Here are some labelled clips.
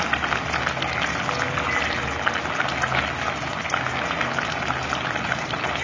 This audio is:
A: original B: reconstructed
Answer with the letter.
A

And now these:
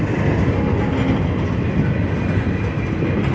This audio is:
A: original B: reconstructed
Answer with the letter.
A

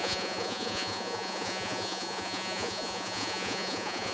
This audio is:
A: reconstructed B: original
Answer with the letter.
A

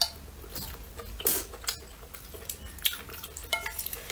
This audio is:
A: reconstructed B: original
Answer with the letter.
B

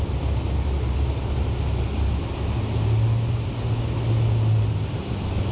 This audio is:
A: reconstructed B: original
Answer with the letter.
B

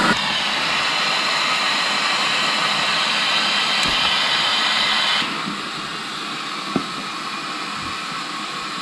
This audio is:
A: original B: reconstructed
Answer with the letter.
A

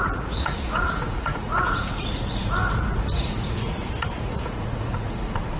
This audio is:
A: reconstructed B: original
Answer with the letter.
A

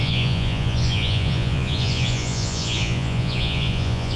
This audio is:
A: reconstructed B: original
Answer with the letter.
A